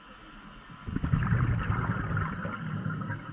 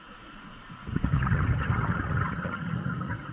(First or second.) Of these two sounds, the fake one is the second